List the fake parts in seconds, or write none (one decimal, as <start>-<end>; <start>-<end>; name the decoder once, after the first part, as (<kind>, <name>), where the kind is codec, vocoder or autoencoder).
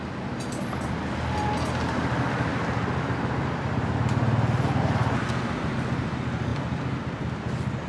6.5-7.2 (vocoder, BigVGAN v2)